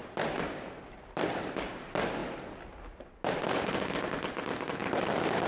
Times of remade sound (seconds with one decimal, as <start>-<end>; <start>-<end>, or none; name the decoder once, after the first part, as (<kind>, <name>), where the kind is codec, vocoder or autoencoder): 0.0-1.4 (vocoder, BigVGAN v2); 4.8-5.5

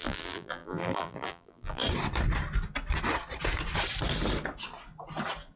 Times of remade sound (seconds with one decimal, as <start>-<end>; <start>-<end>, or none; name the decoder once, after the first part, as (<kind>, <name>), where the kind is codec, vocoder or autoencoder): 0.0-1.8 (vocoder, BigVGAN v2)

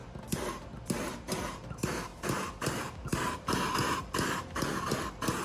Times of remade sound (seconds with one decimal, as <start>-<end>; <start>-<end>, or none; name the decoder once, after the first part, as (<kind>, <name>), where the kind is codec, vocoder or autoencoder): 1.0-5.4 (vocoder, BigVGAN v2)